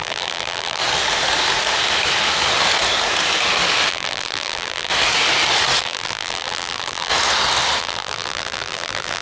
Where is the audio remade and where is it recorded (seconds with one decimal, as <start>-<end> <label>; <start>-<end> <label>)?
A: 0.0-0.8 remade; 0.8-3.9 recorded; 3.9-4.9 remade; 4.9-5.8 recorded; 5.8-7.1 remade; 7.1-7.8 recorded; 7.8-9.2 remade